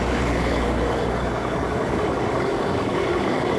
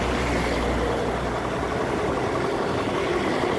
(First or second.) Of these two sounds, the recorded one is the second